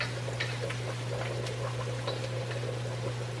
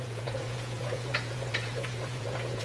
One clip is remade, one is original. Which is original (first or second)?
first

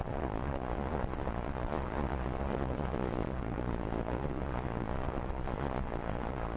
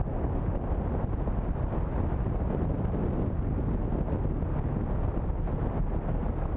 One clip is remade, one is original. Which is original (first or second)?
second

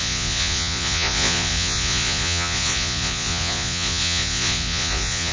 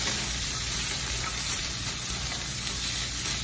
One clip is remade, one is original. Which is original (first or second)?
second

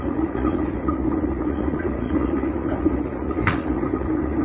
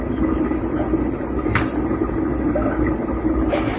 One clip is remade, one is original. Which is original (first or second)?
second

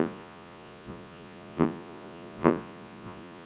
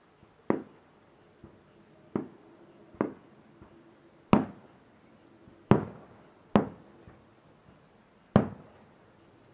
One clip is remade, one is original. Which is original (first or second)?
second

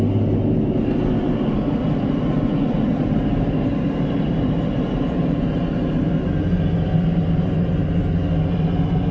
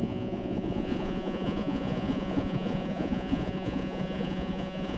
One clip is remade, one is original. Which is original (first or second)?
first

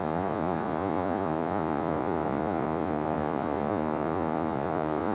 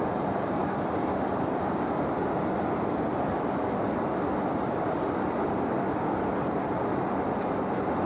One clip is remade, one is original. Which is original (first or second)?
second